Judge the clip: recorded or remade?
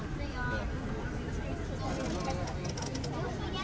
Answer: recorded